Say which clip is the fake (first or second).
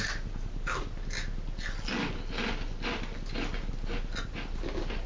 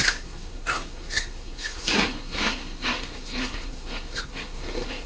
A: second